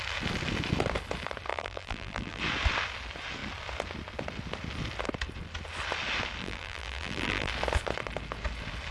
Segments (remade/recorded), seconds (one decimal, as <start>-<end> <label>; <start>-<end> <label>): 0.0-1.5 recorded; 1.5-2.4 remade; 2.4-6.4 recorded; 6.4-7.5 remade; 7.5-8.9 recorded